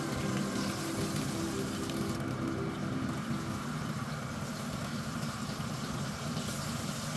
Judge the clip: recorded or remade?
recorded